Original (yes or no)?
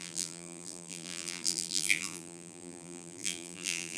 no